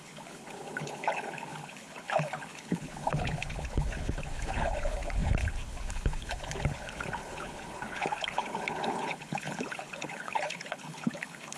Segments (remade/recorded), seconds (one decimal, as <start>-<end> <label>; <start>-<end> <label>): 0.0-11.6 remade